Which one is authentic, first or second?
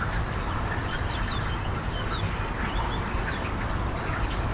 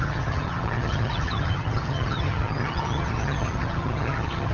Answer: first